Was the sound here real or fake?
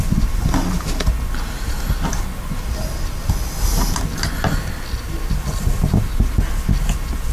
real